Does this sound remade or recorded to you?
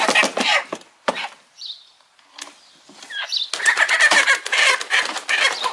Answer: recorded